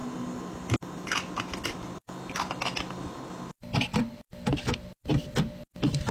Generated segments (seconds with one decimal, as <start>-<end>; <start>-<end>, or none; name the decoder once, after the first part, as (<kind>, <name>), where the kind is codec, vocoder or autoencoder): none